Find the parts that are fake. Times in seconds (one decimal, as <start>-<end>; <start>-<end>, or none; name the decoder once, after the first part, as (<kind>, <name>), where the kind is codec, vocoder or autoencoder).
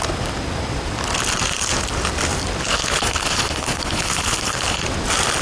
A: 2.7-4.8 (codec, HILCodec)